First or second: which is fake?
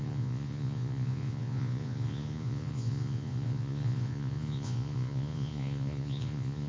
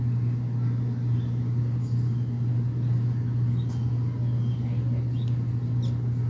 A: first